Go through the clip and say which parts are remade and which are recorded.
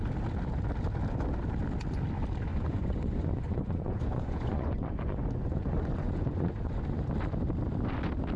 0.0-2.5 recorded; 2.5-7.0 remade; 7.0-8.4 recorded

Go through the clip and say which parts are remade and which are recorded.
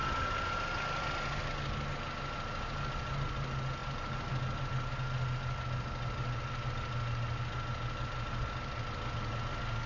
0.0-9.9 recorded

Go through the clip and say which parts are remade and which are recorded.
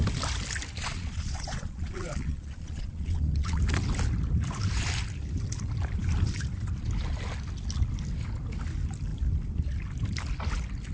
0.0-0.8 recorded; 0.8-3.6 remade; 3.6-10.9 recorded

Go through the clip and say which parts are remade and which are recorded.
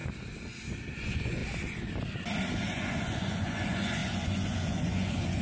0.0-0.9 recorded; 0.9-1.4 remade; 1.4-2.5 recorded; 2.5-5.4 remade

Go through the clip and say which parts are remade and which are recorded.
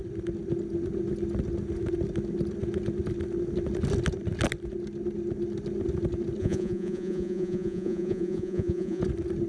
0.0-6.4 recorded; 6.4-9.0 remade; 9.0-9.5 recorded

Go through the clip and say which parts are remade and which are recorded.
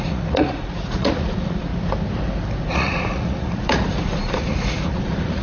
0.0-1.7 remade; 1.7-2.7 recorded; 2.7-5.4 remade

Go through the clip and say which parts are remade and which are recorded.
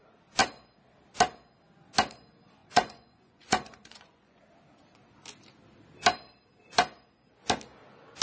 0.0-2.6 recorded; 2.6-4.4 remade; 4.4-8.2 recorded